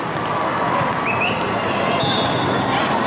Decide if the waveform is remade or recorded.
recorded